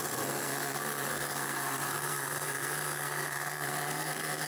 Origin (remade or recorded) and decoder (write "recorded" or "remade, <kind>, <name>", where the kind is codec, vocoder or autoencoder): remade, codec, SNAC